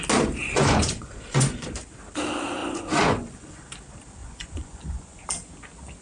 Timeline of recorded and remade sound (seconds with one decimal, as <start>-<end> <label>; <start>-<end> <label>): 0.0-0.4 recorded; 0.4-1.7 remade; 1.7-2.6 recorded; 2.6-3.7 remade; 3.7-4.2 recorded; 4.2-5.2 remade; 5.2-6.0 recorded